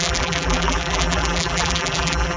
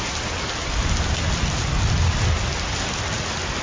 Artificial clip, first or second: first